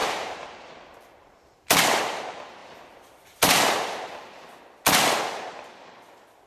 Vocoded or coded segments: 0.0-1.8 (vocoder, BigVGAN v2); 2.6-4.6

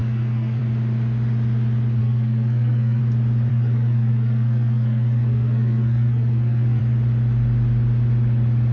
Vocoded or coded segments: 0.0-0.6 (codec, SNAC); 2.0-3.0; 3.5-6.8